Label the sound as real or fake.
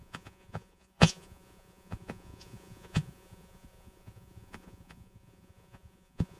fake